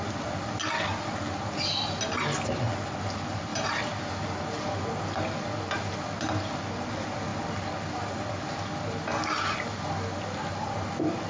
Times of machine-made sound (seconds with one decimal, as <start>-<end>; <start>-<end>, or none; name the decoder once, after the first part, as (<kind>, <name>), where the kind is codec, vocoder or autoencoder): none